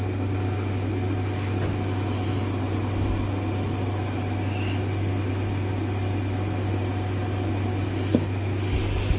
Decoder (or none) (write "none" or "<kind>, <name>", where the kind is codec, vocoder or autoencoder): none